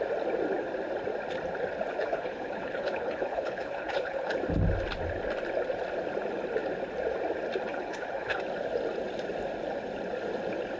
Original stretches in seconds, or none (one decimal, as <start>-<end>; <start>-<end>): 0.0-2.0; 4.3-7.7; 8.4-10.8